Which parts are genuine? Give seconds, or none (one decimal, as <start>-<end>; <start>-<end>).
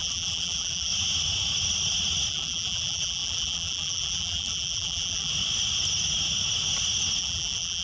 0.9-2.3; 5.3-7.2